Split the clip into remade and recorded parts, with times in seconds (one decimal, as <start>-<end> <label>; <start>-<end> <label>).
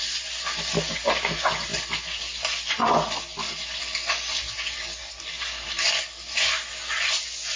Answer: 0.0-7.6 recorded